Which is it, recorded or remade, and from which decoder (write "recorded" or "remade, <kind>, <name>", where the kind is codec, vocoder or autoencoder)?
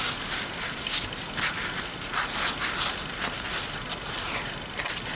recorded